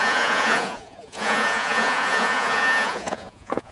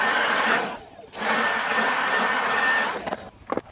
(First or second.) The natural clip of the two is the second